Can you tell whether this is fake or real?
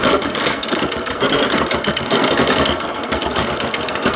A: fake